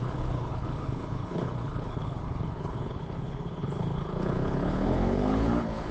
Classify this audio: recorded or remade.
remade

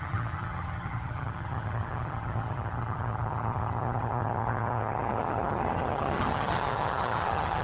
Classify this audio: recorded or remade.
remade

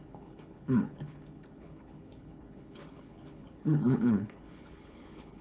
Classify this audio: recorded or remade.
remade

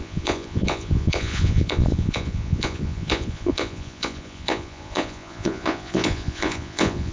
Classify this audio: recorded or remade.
remade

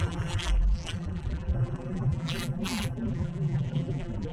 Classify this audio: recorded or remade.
remade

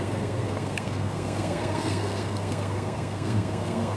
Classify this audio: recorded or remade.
remade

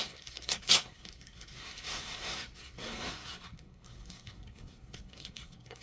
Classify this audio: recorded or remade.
remade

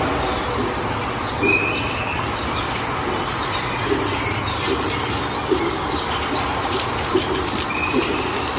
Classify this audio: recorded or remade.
recorded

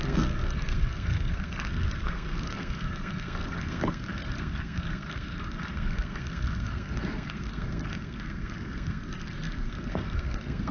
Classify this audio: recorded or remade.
remade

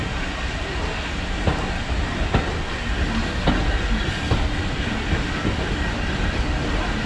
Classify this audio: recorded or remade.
recorded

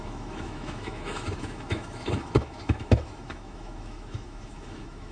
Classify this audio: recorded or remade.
remade